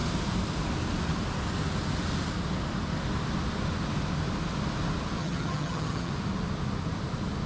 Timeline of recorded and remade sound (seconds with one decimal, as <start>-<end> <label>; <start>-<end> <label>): 0.0-5.2 recorded; 5.2-6.1 remade; 6.1-7.5 recorded